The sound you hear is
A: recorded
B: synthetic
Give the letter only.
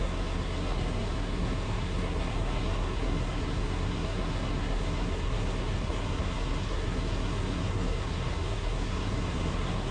B